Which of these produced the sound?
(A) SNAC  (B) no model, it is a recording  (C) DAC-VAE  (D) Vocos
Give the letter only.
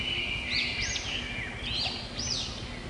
B